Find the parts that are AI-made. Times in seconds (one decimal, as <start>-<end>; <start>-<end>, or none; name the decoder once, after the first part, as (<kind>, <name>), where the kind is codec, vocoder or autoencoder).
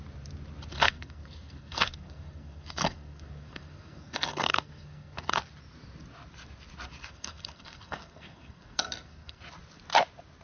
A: 0.7-5.5 (codec, SNAC); 7.0-9.4